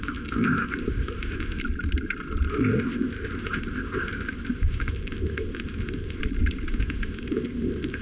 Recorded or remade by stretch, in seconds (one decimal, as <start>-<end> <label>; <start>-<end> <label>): 0.0-1.6 remade; 1.6-2.5 recorded; 2.5-6.2 remade; 6.2-6.7 recorded; 6.7-8.0 remade